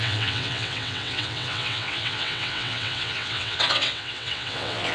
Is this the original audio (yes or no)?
no